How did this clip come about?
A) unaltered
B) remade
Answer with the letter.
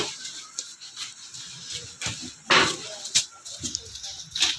A